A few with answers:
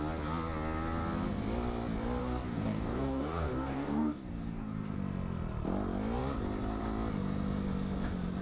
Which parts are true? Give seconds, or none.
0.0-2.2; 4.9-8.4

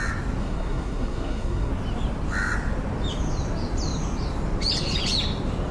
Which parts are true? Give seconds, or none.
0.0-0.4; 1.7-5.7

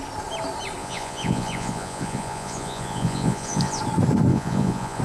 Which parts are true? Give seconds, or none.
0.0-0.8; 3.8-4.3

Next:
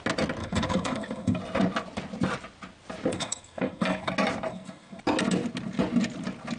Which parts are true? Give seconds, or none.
0.0-0.4; 1.4-3.1; 4.1-4.5; 5.0-6.6

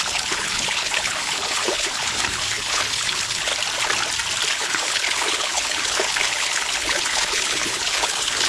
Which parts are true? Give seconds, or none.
3.5-4.5